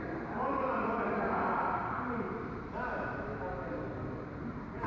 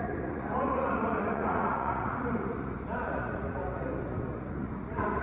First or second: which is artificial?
second